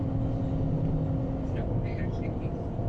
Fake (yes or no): no